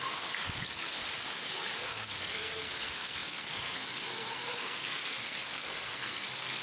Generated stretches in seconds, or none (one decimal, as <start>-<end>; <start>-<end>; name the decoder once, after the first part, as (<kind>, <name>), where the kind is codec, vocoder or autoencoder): 0.0-1.0 (codec, SNAC); 1.5-6.6